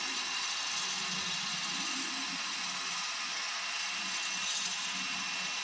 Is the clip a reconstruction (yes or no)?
no